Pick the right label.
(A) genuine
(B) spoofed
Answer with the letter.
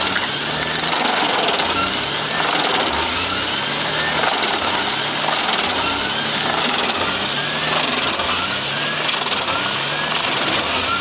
A